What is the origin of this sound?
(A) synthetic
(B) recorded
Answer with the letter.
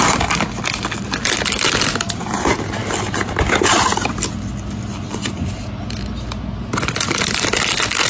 B